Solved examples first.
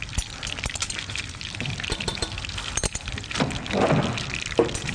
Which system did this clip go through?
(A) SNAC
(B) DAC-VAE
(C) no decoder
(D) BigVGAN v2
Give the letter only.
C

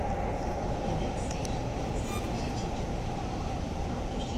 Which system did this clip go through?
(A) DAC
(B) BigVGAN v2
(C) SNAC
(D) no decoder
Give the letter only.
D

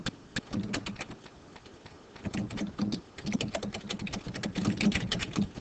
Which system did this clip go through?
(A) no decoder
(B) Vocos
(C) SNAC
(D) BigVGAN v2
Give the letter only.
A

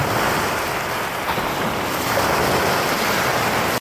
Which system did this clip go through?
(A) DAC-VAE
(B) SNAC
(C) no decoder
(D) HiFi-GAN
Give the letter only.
C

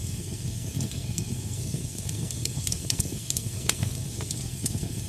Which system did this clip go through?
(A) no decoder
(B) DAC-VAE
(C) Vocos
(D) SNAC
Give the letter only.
D